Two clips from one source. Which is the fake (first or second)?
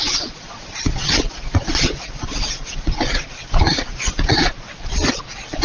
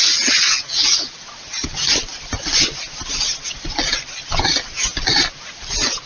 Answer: first